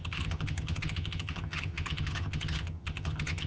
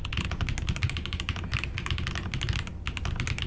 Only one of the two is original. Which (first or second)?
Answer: second